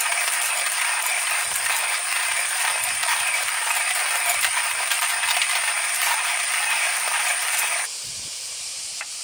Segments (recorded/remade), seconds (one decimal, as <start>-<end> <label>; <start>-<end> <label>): 0.0-5.1 remade; 5.1-5.9 recorded; 5.9-9.2 remade